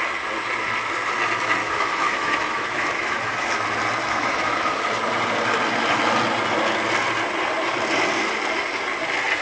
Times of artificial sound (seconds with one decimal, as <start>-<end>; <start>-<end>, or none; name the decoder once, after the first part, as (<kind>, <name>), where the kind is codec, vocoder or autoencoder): 1.6-3.5 (autoencoder, DAC-VAE); 4.0-4.8